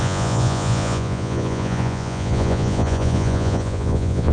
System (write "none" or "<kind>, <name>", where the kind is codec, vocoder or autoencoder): vocoder, Vocos